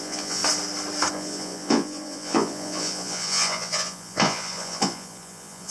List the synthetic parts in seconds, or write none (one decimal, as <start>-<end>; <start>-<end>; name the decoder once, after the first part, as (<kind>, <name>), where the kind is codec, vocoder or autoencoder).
0.0-0.4 (vocoder, Vocos); 1.1-5.7